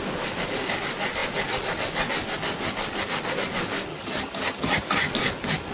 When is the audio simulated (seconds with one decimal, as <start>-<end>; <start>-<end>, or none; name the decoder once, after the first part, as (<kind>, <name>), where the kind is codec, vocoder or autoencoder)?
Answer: 3.9-5.1 (vocoder, HiFi-GAN)